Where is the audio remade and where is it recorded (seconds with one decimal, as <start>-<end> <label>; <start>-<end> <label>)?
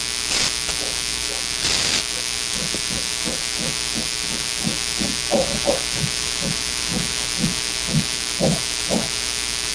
0.0-9.7 recorded